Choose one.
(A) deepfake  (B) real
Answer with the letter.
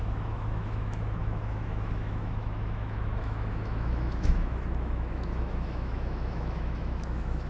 A